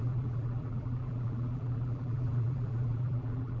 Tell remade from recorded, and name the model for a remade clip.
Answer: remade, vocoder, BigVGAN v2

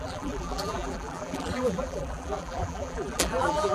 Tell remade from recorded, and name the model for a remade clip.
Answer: remade, vocoder, BigVGAN v2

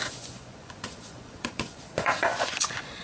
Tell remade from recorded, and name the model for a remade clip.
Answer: remade, vocoder, Vocos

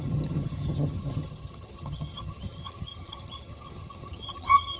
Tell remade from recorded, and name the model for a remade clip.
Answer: remade, vocoder, HiFi-GAN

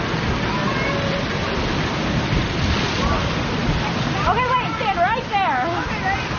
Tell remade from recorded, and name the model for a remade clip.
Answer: recorded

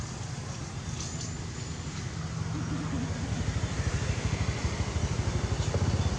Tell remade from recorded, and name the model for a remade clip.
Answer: recorded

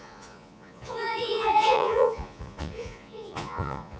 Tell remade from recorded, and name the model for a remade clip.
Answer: remade, vocoder, Vocos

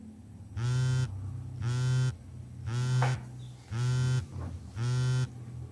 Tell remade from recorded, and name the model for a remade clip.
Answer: recorded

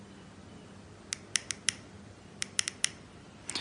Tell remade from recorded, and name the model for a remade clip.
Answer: recorded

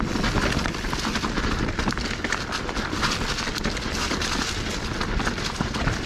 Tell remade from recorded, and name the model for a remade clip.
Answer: recorded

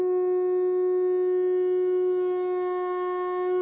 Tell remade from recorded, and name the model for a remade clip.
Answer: recorded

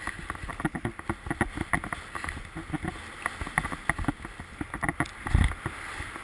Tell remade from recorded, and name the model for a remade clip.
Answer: recorded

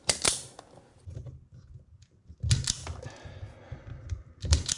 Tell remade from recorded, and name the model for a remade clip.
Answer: recorded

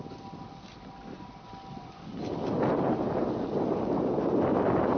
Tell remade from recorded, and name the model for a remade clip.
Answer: recorded